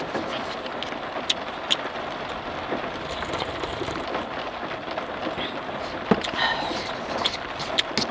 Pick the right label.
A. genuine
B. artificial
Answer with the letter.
A